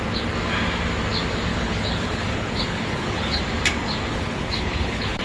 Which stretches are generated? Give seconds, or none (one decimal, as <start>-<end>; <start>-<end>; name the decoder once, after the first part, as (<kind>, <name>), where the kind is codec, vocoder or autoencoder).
1.5-3.4 (codec, HILCodec); 4.1-5.2